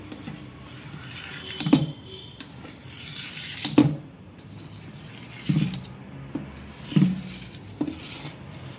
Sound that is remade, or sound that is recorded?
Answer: remade